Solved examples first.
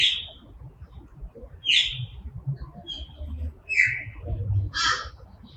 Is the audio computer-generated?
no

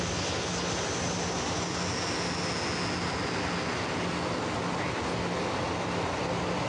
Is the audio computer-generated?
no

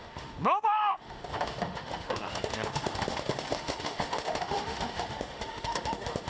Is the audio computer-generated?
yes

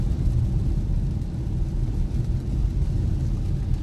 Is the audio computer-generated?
no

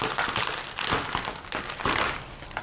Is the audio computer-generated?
no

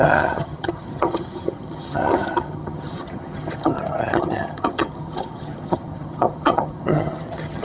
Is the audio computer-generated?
yes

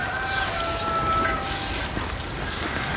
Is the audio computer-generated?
no